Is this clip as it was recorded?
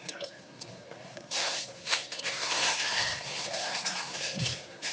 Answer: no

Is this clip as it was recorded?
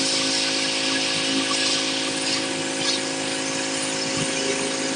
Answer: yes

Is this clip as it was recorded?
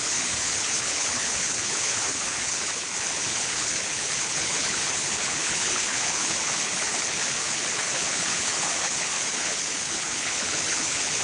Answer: no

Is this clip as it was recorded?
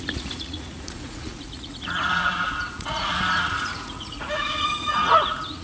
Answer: no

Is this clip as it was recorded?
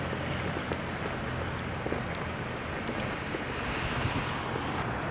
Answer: yes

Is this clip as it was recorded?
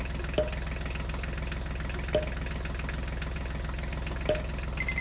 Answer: yes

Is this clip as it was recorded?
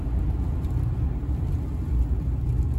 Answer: yes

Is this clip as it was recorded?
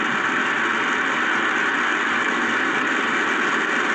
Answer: yes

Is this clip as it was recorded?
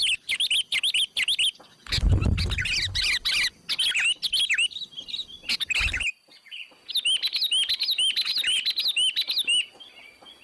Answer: yes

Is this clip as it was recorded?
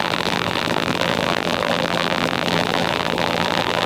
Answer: no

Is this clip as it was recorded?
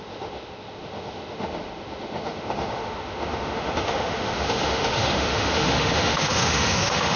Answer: no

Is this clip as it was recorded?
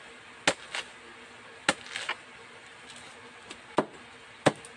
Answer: yes